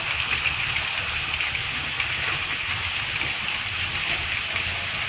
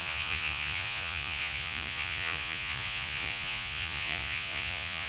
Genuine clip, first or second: first